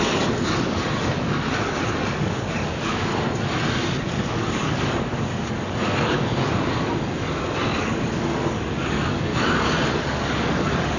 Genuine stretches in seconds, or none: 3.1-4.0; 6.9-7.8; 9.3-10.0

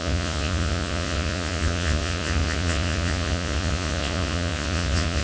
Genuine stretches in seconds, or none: none

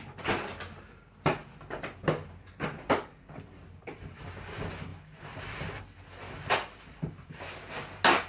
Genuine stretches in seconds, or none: 0.0-8.3

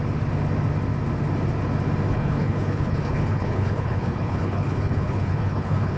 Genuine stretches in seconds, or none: 0.0-2.1

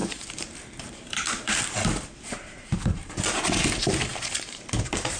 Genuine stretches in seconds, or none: 3.1-4.1

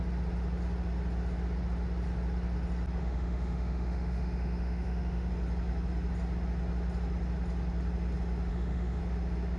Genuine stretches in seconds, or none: 0.0-3.0; 5.3-8.5; 9.0-9.6

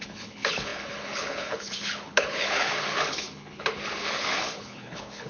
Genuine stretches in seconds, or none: none

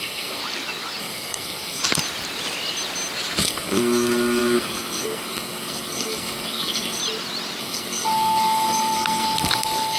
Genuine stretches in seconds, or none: 0.4-1.0; 1.8-3.4; 7.0-7.6